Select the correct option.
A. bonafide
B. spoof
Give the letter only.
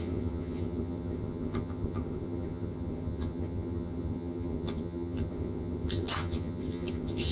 B